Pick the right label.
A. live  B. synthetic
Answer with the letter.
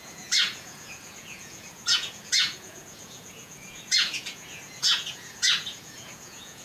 B